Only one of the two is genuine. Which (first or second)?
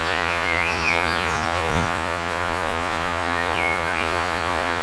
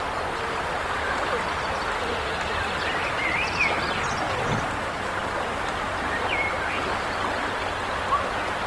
second